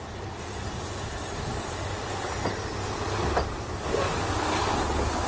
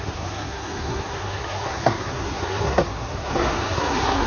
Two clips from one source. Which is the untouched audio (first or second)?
first